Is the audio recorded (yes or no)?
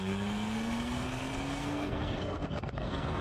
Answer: no